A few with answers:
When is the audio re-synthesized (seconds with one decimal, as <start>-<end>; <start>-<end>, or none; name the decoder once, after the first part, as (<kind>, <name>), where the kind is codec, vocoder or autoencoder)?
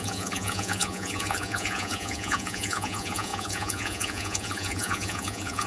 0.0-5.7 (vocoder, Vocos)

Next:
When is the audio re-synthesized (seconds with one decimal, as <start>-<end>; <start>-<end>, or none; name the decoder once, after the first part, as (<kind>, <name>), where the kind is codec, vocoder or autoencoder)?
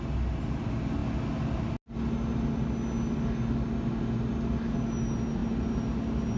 none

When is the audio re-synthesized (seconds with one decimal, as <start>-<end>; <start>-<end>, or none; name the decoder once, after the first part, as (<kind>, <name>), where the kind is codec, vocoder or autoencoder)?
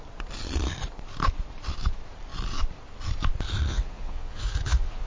3.7-5.1 (vocoder, Vocos)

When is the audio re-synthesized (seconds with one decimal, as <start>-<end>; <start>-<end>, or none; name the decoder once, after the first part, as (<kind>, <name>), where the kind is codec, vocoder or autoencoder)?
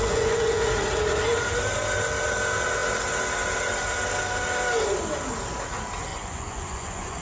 0.0-0.7 (vocoder, Vocos); 6.1-7.2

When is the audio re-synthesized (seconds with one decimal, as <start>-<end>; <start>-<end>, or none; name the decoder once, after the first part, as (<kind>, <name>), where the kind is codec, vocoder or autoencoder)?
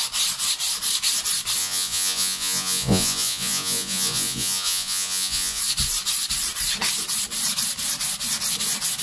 1.6-5.6 (vocoder, Vocos)